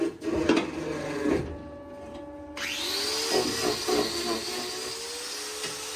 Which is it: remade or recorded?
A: recorded